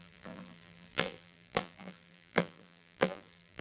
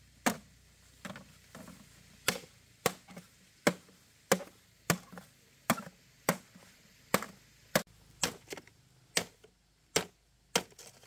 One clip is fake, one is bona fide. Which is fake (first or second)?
first